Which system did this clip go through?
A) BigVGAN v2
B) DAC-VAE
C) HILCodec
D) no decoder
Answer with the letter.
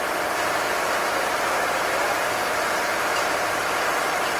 A